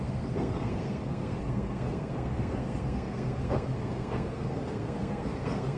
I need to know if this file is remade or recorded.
remade